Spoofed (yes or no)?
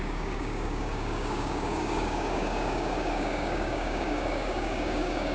yes